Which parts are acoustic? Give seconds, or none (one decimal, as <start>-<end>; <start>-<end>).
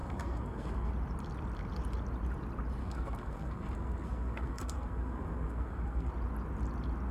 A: 0.9-2.8; 6.1-7.1